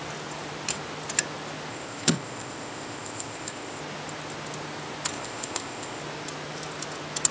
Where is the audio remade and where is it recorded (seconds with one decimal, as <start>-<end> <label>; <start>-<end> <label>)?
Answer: 0.0-1.7 recorded; 1.7-3.8 remade; 3.8-5.1 recorded; 5.1-6.0 remade; 6.0-7.3 recorded